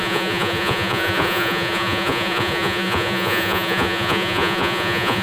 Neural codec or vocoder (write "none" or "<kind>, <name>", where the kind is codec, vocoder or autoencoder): vocoder, Vocos